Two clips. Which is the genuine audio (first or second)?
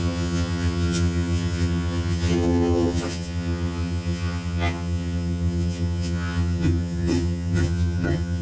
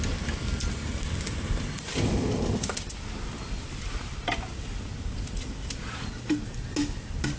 second